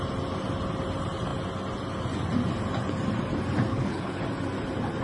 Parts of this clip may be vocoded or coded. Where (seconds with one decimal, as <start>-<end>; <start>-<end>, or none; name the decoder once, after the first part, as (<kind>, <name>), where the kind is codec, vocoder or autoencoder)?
3.7-4.2 (codec, HILCodec)